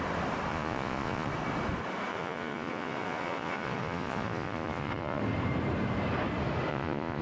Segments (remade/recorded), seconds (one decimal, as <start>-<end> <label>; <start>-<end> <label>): 0.0-0.5 recorded; 0.5-1.3 remade; 1.3-2.1 recorded; 2.1-5.2 remade; 5.2-6.7 recorded; 6.7-7.2 remade